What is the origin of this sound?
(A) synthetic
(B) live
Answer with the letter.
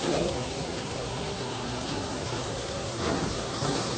A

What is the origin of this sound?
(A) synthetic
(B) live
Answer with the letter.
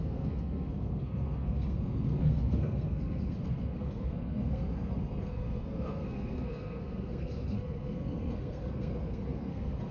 A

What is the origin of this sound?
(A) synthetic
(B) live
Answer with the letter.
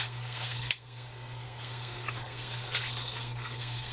A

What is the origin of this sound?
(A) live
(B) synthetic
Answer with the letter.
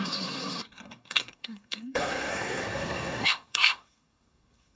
B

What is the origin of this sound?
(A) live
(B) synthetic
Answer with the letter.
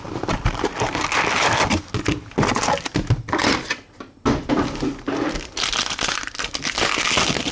A